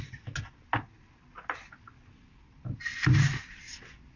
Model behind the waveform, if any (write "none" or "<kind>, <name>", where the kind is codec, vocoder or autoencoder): none